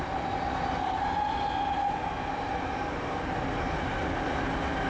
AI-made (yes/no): no